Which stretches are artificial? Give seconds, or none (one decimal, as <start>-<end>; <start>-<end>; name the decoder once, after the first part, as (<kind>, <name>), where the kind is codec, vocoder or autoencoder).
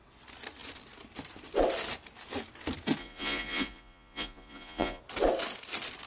3.0-5.0 (vocoder, Vocos)